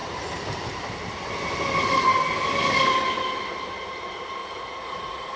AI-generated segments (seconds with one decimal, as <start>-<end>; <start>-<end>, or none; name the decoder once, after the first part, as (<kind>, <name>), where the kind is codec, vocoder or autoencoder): 4.4-5.4 (vocoder, Vocos)